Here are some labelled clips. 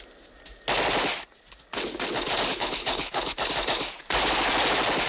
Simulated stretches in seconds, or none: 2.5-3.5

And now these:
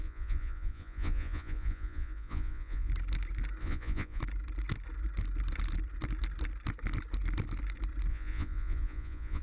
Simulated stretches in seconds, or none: 0.0-2.9; 3.6-4.2; 8.1-9.4

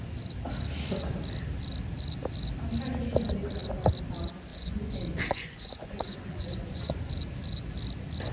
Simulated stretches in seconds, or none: 4.5-7.1

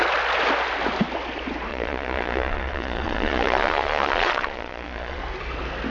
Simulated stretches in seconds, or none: 1.7-5.2

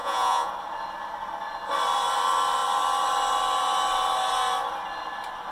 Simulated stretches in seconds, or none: 0.0-0.5

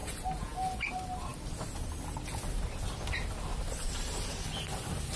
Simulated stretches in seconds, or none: 0.0-0.9

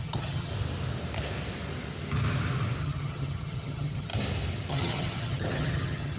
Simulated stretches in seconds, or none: 0.0-0.5; 2.8-4.1; 4.7-6.2

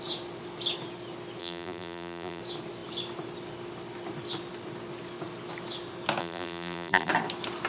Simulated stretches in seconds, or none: 1.4-2.4; 6.2-7.1